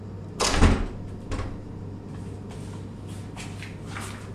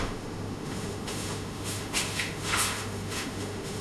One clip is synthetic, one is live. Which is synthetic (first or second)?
second